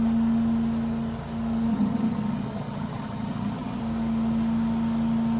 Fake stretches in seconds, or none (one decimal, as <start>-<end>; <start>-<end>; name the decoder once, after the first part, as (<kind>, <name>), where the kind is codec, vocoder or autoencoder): 1.7-3.8 (vocoder, HiFi-GAN)